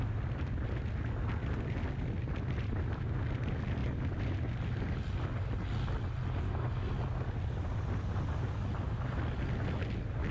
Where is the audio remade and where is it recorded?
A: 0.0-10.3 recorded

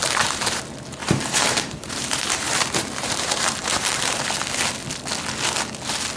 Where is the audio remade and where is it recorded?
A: 0.0-0.6 remade; 0.6-1.0 recorded; 1.0-4.2 remade; 4.2-6.2 recorded

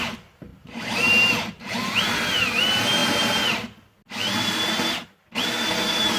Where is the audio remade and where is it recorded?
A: 0.0-0.5 recorded; 0.5-1.7 remade; 1.7-6.2 recorded

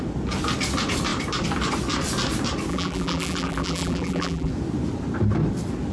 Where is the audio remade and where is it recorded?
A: 0.0-2.7 recorded; 2.7-4.5 remade; 4.5-5.9 recorded

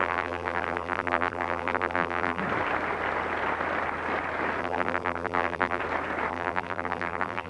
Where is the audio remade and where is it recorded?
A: 0.0-2.4 remade; 2.4-4.6 recorded; 4.6-5.8 remade; 5.8-6.3 recorded; 6.3-7.5 remade

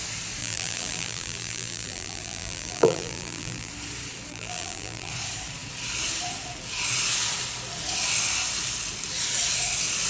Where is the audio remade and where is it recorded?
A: 0.0-0.4 recorded; 0.4-3.7 remade; 3.7-4.3 recorded; 4.3-5.1 remade; 5.1-10.1 recorded

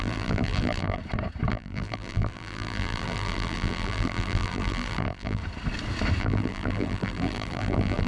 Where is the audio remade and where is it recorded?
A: 0.0-1.0 remade; 1.0-1.5 recorded; 1.5-5.4 remade; 5.4-6.2 recorded; 6.2-8.1 remade

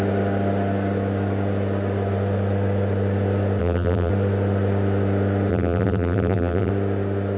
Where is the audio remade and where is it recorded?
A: 0.0-3.6 recorded; 3.6-4.1 remade; 4.1-5.5 recorded; 5.5-6.7 remade; 6.7-7.4 recorded